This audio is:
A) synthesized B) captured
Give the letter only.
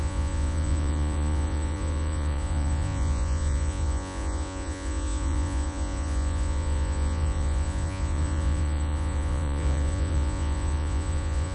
A